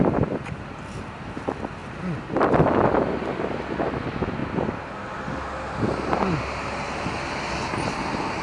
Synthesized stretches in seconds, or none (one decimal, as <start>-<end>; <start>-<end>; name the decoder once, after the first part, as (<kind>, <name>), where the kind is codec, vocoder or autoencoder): 1.8-3.6 (vocoder, BigVGAN v2)